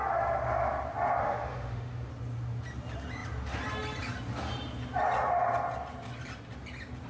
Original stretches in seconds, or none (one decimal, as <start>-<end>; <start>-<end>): 0.0-1.2; 2.1-7.1